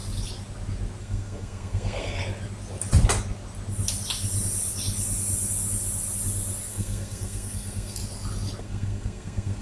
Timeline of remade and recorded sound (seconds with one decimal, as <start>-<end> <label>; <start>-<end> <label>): 0.0-1.0 recorded; 1.0-2.2 remade; 2.2-6.7 recorded; 6.7-8.0 remade; 8.0-8.6 recorded; 8.6-9.6 remade